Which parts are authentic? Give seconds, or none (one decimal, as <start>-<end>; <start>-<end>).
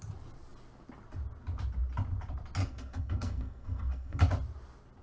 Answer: 0.0-2.6; 4.2-5.0